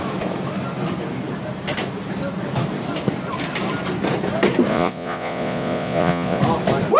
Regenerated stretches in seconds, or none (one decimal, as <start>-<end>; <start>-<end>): 4.7-6.4

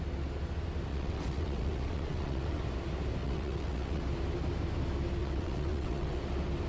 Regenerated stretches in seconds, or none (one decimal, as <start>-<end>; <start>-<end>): 0.9-2.6; 3.2-4.0; 5.2-6.2